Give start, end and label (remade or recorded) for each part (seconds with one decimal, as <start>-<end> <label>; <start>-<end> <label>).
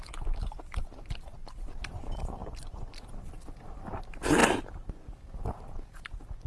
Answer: 0.0-2.4 recorded; 2.4-3.2 remade; 3.2-6.5 recorded